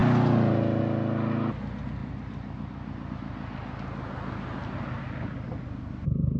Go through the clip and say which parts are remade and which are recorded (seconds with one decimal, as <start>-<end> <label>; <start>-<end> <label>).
0.0-6.4 recorded

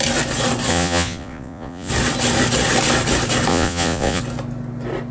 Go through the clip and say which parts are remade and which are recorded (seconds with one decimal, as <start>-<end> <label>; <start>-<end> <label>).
0.0-0.7 recorded; 0.7-1.9 remade; 1.9-3.5 recorded; 3.5-4.2 remade; 4.2-5.1 recorded

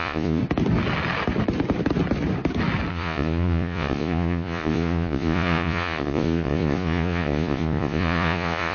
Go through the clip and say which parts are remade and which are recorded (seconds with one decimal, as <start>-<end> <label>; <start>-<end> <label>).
0.0-0.4 remade; 0.4-2.9 recorded; 2.9-8.7 remade

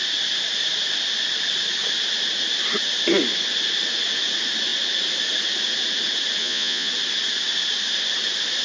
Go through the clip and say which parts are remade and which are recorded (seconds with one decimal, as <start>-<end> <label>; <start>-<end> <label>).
0.0-6.4 recorded; 6.4-6.9 remade; 6.9-8.6 recorded

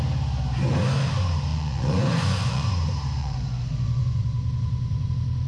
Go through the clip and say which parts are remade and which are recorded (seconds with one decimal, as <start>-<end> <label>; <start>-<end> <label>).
0.0-1.5 recorded; 1.5-2.7 remade; 2.7-3.2 recorded; 3.2-5.1 remade; 5.1-5.5 recorded

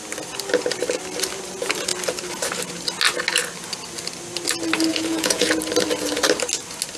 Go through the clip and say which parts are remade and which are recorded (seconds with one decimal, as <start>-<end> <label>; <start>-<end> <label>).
0.0-4.9 recorded; 4.9-5.5 remade; 5.5-7.0 recorded

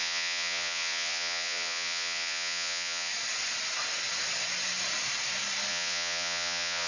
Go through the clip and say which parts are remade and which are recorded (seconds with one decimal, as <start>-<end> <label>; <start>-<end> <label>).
0.0-3.1 remade; 3.1-5.7 recorded; 5.7-6.9 remade